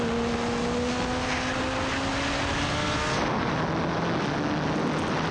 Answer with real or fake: real